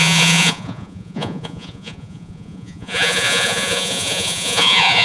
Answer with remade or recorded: remade